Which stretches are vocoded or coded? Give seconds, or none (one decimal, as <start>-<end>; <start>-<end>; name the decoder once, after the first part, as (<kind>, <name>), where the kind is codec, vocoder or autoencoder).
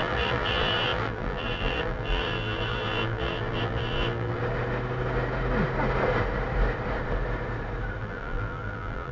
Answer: 0.0-4.4 (vocoder, BigVGAN v2); 8.0-9.1